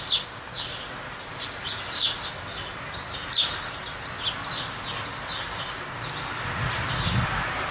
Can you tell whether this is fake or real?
real